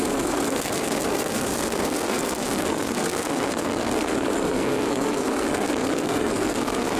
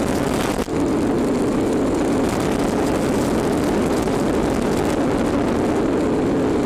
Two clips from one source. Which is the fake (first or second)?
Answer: first